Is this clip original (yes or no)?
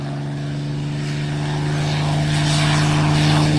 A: yes